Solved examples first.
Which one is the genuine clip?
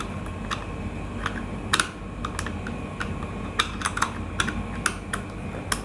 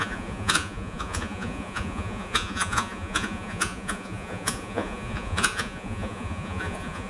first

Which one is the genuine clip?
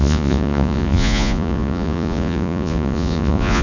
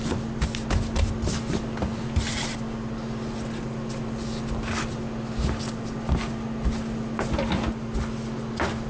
second